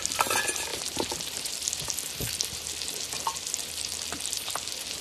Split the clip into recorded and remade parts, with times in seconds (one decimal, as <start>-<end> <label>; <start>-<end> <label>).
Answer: 0.0-5.0 recorded